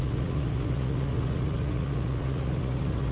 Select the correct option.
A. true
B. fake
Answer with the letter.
B